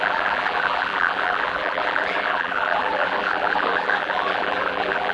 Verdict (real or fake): fake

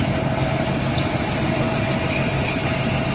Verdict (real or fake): real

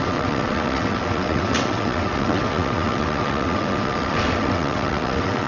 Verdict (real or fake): fake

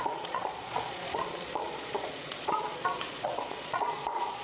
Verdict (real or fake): fake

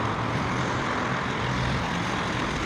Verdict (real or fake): real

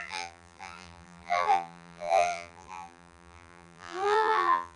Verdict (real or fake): fake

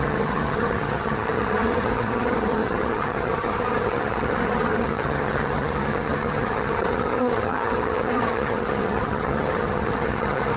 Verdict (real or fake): fake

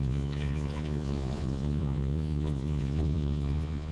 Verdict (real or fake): fake